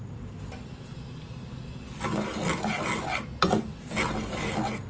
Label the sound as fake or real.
real